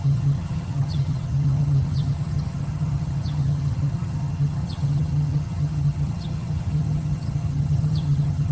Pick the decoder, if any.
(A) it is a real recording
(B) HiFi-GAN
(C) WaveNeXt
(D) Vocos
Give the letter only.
B